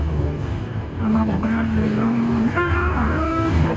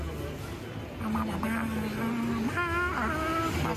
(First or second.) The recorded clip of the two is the second